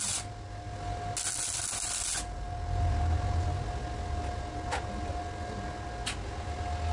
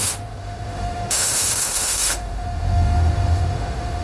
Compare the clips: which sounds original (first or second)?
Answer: first